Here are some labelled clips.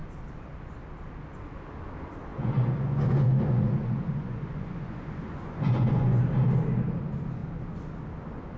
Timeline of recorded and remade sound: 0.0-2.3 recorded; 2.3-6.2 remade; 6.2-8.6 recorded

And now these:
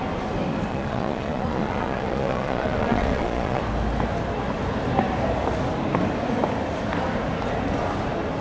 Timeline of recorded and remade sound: 0.0-0.7 recorded; 0.7-3.6 remade; 3.6-8.4 recorded

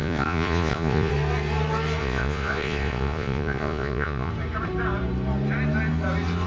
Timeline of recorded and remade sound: 0.0-1.1 remade; 1.1-2.0 recorded; 2.0-4.3 remade; 4.3-6.5 recorded

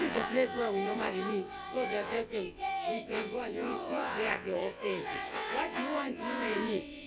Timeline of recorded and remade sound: 0.0-7.1 remade

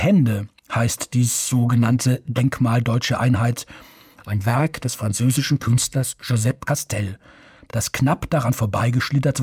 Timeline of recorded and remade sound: 0.0-1.1 recorded; 1.1-2.4 remade; 2.4-4.2 recorded; 4.2-6.7 remade; 6.7-9.4 recorded

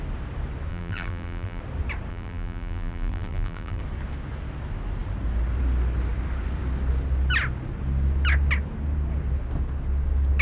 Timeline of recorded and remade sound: 0.0-0.7 recorded; 0.7-1.6 remade; 1.6-2.1 recorded; 2.1-3.8 remade; 3.8-10.4 recorded

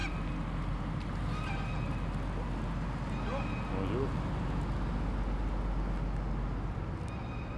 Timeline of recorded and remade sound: 0.0-7.6 recorded

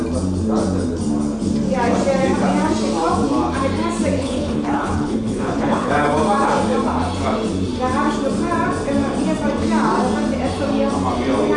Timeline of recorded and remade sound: 0.0-4.2 recorded; 4.2-5.9 remade; 5.9-11.6 recorded